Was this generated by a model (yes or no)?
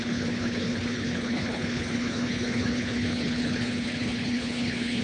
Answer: yes